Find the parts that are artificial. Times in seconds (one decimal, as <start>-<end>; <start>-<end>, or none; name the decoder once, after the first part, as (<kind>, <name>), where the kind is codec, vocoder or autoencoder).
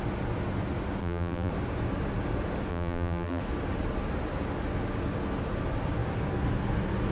1.0-1.5 (vocoder, BigVGAN v2); 2.7-3.4